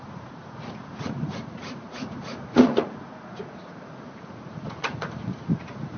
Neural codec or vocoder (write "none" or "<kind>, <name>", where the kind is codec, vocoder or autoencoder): vocoder, Vocos